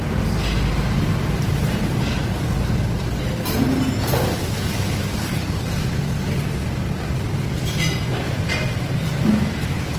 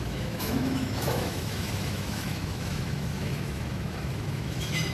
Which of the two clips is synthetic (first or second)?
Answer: second